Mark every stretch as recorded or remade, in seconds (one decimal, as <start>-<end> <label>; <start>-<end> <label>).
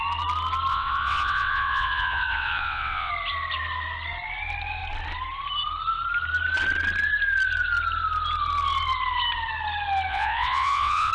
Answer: 0.0-0.7 recorded; 0.7-3.1 remade; 3.1-10.1 recorded; 10.1-11.1 remade